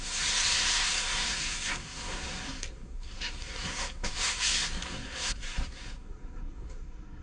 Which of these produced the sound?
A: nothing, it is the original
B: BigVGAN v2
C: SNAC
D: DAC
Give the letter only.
C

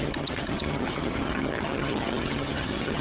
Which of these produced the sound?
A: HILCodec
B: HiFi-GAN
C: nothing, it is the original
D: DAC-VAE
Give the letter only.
B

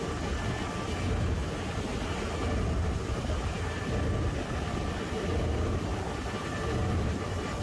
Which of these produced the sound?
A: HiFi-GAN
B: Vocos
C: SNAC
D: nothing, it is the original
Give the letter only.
D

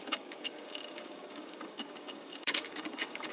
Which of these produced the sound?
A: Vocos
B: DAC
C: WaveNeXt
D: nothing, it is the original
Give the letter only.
B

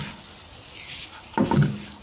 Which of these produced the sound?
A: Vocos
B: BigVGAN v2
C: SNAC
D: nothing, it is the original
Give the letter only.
D